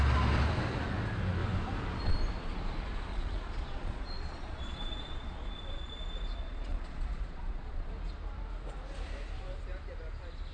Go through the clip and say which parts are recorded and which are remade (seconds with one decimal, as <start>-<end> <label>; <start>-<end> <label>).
0.0-3.1 recorded; 3.1-6.0 remade; 6.0-6.4 recorded; 6.4-7.9 remade; 7.9-10.5 recorded

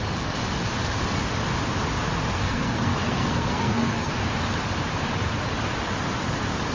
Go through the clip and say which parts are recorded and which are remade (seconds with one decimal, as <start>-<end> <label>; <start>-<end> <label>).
0.0-2.3 recorded; 2.3-4.1 remade; 4.1-6.7 recorded